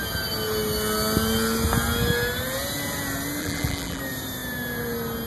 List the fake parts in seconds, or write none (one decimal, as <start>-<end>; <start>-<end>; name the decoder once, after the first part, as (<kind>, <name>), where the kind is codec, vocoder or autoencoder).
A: 3.4-4.0 (vocoder, BigVGAN v2)